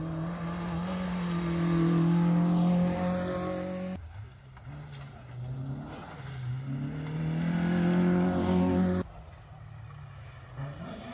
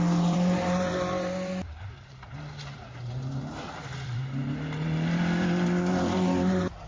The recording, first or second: first